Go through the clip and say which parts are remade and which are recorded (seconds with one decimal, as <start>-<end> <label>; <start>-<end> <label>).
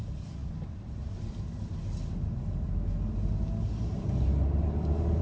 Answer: 0.0-5.2 recorded